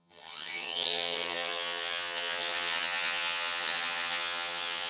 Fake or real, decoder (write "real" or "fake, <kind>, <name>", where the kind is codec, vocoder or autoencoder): fake, vocoder, HiFi-GAN